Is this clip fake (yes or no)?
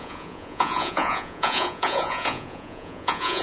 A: yes